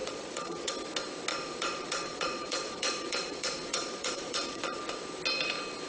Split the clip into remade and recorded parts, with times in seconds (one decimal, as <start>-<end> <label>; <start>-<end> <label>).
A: 0.0-0.7 remade; 0.7-1.3 recorded; 1.3-4.8 remade; 4.8-5.9 recorded